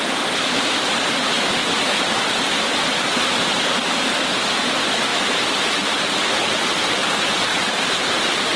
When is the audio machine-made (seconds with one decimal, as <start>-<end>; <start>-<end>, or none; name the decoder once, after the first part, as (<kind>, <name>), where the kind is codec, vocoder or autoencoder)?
none